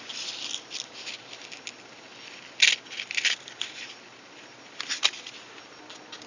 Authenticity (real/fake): real